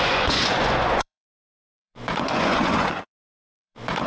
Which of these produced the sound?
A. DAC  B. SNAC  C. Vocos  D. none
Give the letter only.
C